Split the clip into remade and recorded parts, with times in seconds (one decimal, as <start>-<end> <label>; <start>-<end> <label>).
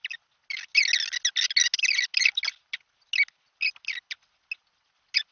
0.0-5.3 recorded